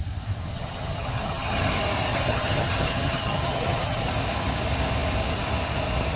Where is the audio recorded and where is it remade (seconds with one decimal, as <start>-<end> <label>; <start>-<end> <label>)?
0.0-0.5 recorded; 0.5-1.7 remade; 1.7-2.1 recorded; 2.1-4.1 remade; 4.1-6.2 recorded